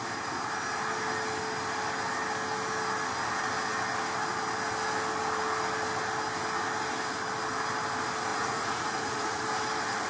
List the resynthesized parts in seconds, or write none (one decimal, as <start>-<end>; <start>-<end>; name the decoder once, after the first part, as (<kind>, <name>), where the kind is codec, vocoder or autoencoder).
8.3-9.4 (vocoder, Vocos)